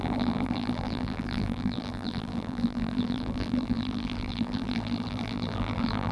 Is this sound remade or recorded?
remade